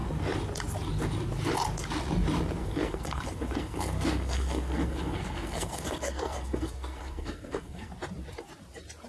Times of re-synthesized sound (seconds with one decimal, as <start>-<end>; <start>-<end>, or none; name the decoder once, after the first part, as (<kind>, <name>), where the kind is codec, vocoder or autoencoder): 2.6-7.9 (codec, SNAC)